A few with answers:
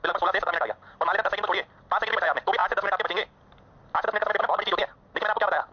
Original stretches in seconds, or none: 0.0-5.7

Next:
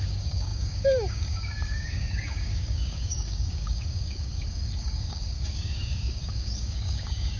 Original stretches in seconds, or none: none

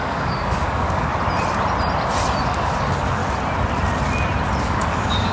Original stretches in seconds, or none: 1.1-2.4; 3.2-4.6